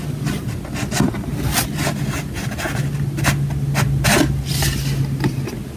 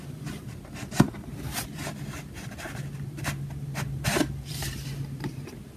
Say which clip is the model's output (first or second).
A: second